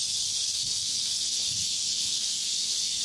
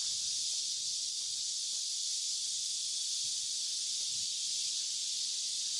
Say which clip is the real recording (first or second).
second